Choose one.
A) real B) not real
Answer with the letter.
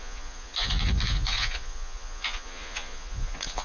B